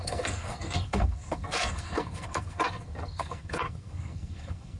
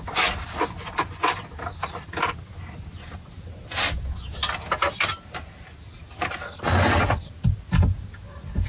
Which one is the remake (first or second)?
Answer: first